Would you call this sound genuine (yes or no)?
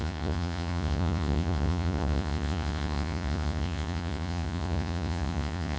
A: no